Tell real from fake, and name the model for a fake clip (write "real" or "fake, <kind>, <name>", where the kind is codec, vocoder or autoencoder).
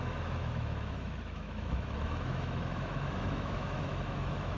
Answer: fake, autoencoder, DAC-VAE